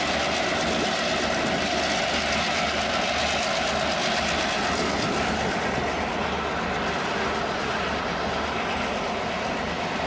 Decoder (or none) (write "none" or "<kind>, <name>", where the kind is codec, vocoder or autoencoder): none